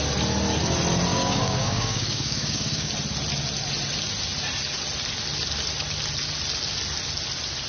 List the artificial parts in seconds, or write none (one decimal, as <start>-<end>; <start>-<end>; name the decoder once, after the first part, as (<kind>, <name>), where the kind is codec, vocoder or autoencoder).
1.1-2.9 (codec, DAC)